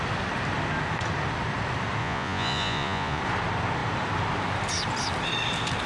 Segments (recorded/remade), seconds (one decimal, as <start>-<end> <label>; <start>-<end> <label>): 0.0-2.0 recorded; 2.0-3.2 remade; 3.2-5.9 recorded